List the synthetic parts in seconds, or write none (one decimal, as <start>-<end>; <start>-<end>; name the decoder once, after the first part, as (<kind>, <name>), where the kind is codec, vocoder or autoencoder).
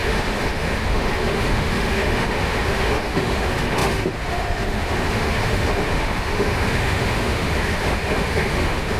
0.0-9.0 (autoencoder, DAC-VAE)